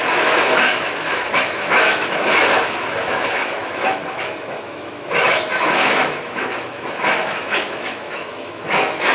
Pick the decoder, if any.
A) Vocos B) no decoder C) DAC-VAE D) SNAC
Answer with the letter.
C